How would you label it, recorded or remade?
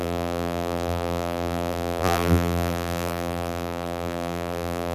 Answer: remade